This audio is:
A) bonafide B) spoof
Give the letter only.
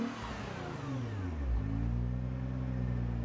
A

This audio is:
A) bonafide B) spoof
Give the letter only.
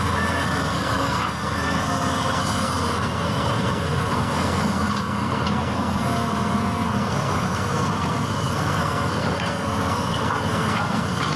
B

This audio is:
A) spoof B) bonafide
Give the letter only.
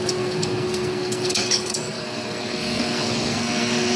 A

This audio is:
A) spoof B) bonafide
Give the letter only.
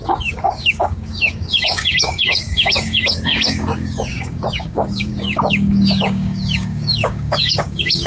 A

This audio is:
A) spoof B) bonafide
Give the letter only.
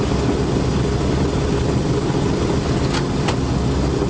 B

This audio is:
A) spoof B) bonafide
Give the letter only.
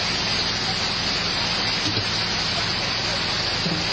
B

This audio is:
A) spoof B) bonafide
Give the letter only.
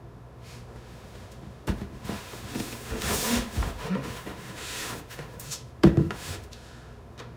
A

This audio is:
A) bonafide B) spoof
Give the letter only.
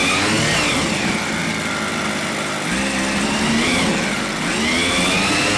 A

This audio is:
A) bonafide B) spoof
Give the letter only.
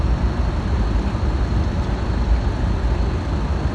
A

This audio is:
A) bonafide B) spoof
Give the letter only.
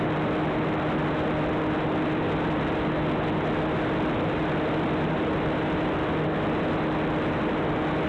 A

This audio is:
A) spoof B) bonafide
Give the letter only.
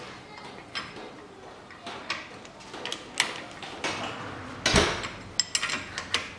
B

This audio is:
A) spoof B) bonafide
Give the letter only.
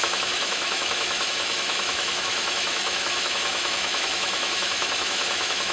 A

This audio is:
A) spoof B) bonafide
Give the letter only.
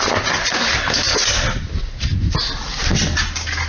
B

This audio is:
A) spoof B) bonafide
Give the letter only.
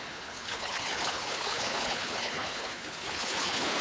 A